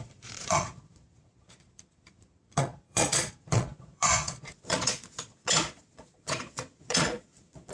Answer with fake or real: fake